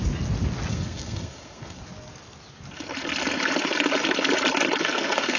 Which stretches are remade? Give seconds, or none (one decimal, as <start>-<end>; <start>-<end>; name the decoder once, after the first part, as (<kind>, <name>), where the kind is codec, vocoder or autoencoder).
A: 0.7-1.8 (codec, SNAC); 4.8-5.4